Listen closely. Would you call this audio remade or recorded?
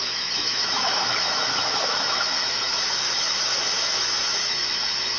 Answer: remade